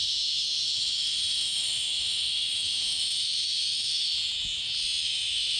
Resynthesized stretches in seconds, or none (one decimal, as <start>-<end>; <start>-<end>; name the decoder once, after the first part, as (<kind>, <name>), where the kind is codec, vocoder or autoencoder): 0.0-4.1 (autoencoder, DAC-VAE); 5.0-5.6

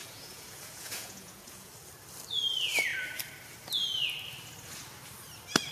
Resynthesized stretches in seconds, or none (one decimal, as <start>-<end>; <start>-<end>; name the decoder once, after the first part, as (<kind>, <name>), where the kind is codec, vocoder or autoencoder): 0.0-1.7 (vocoder, Vocos)

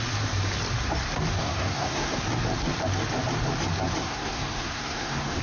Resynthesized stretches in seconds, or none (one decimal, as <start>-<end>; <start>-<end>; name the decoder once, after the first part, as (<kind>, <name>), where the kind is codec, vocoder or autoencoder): 1.4-2.2 (codec, SNAC); 4.0-5.4